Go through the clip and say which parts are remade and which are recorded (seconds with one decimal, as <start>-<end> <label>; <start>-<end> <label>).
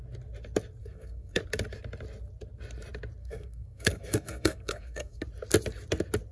0.0-0.8 recorded; 0.8-1.4 remade; 1.4-3.2 recorded; 3.2-5.2 remade; 5.2-6.3 recorded